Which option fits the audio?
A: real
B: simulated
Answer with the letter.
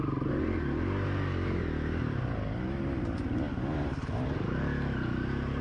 A